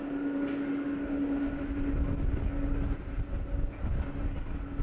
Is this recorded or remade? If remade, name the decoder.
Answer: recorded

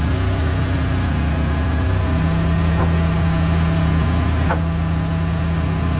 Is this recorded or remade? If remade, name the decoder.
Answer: recorded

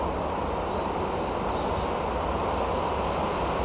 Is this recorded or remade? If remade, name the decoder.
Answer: recorded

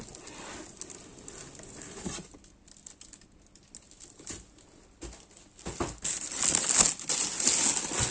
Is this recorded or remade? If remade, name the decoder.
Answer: recorded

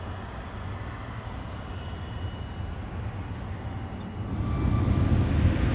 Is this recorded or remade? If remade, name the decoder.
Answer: recorded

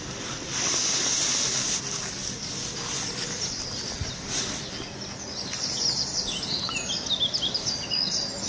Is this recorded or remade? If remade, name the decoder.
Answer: recorded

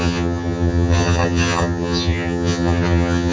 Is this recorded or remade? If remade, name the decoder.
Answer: remade, vocoder, HiFi-GAN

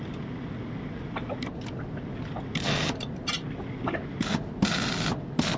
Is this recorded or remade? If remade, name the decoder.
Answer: recorded